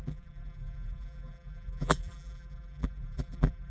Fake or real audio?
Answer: fake